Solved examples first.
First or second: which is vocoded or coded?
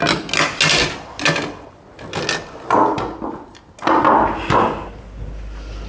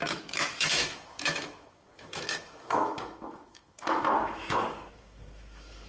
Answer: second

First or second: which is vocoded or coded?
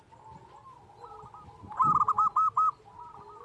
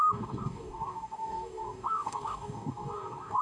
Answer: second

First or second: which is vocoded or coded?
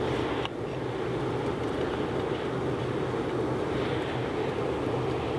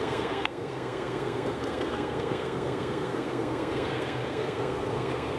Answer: second